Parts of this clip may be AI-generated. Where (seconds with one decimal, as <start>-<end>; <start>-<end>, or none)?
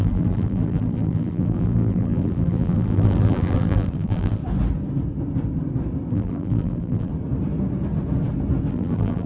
0.0-4.4; 6.1-7.1; 8.7-9.3